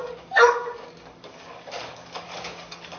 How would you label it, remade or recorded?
remade